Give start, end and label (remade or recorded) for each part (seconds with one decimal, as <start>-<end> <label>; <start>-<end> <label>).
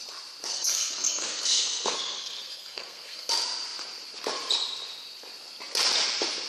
0.0-0.5 recorded; 0.5-3.3 remade; 3.3-6.5 recorded